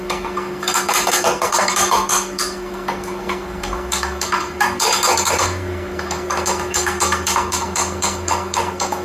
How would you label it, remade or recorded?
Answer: remade